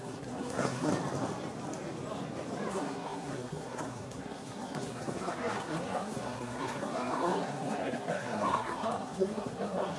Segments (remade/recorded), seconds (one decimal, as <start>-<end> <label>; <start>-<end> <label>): 0.0-0.9 remade; 0.9-2.7 recorded; 2.7-10.0 remade